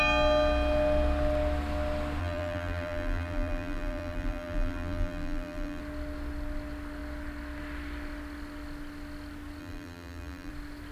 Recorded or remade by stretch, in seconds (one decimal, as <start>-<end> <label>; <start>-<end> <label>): 0.0-2.2 recorded; 2.2-5.8 remade; 5.8-9.6 recorded; 9.6-10.5 remade; 10.5-10.9 recorded